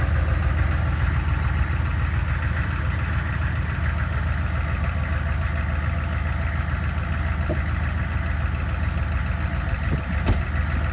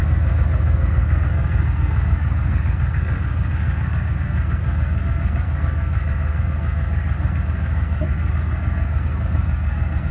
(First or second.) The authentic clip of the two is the first